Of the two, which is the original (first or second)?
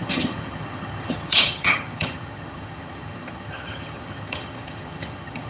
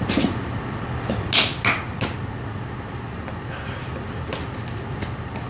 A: second